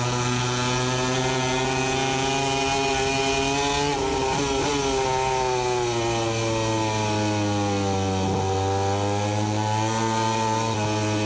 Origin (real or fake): real